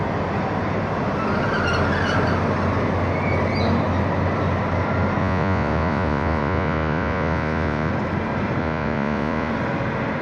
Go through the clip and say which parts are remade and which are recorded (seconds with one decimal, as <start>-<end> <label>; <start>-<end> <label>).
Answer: 0.0-5.2 recorded; 5.2-7.9 remade; 7.9-8.6 recorded; 8.6-9.5 remade; 9.5-10.2 recorded